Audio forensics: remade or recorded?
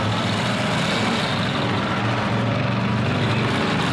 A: recorded